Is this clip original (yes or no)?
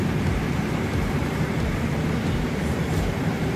no